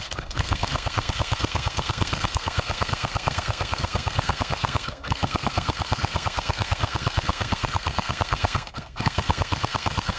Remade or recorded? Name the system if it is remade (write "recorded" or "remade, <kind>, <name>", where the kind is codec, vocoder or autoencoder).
remade, codec, SNAC